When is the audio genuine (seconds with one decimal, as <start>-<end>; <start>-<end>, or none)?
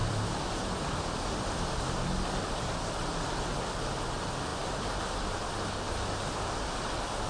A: 2.8-7.3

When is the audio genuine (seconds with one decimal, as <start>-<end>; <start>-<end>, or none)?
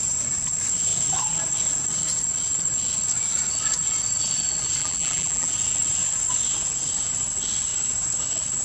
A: 0.0-4.8; 5.5-8.6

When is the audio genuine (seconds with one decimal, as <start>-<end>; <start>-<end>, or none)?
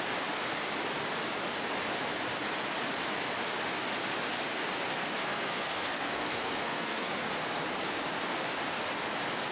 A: 0.0-5.2; 7.1-9.5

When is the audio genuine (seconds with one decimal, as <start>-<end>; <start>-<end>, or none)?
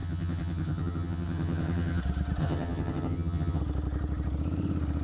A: 2.0-2.4; 3.6-5.0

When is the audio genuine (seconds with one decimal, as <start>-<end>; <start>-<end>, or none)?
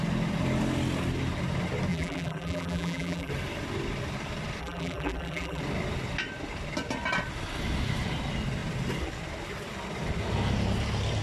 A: 0.0-1.9; 3.3-4.6; 5.6-11.2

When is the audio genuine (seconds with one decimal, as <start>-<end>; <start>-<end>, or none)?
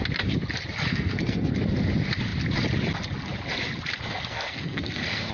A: 0.0-0.9; 1.5-4.3